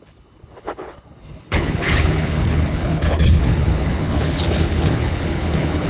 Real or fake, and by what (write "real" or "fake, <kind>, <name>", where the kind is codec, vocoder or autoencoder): fake, codec, HILCodec